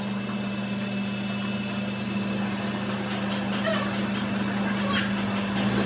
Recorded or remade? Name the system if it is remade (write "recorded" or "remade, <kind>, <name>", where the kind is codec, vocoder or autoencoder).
recorded